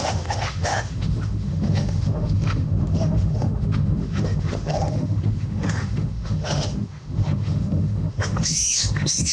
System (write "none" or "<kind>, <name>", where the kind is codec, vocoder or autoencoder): autoencoder, DAC-VAE